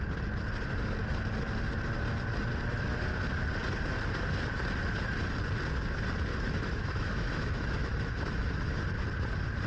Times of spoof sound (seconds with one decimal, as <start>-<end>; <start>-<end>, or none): 6.3-8.8